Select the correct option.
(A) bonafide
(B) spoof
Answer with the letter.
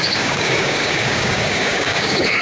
B